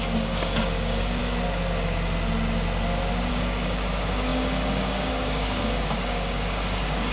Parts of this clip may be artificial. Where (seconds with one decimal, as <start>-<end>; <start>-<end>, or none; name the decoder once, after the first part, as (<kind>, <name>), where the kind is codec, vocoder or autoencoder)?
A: 0.0-1.2 (codec, DAC); 3.3-7.1